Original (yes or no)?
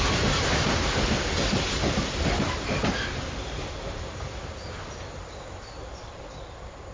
yes